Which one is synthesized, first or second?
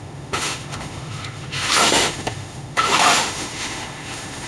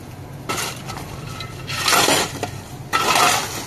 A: first